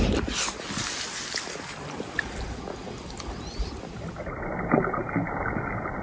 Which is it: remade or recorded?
recorded